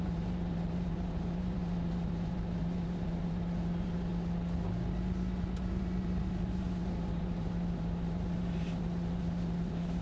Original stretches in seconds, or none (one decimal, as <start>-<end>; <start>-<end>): 4.1-5.4